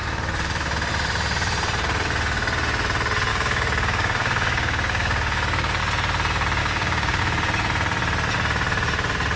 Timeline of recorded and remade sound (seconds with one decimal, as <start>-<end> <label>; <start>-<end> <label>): 0.0-3.3 recorded; 3.3-5.8 remade; 5.8-6.6 recorded; 6.6-7.2 remade; 7.2-9.4 recorded